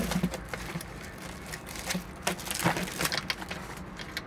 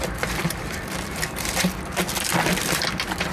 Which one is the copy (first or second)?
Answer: second